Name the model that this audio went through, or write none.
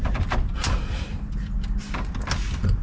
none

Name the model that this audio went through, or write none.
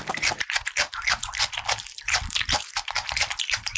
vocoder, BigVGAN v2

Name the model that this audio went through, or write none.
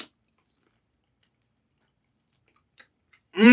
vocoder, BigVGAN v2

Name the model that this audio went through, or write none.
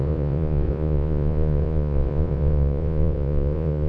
vocoder, Vocos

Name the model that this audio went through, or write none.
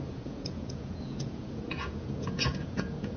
vocoder, Vocos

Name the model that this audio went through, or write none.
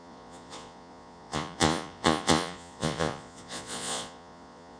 vocoder, Vocos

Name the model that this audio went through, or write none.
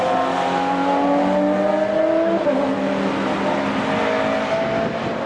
none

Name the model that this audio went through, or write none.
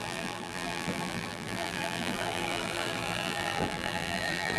vocoder, BigVGAN v2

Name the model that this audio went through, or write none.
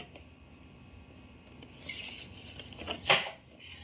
none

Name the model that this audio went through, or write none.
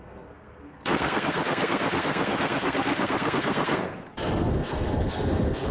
codec, SNAC